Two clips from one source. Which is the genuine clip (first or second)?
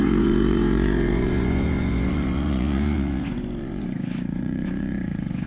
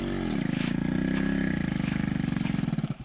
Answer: second